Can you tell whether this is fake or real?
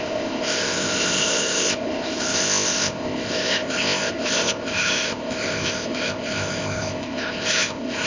fake